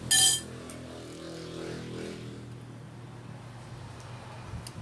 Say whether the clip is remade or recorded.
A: recorded